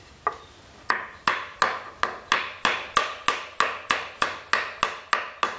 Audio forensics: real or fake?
real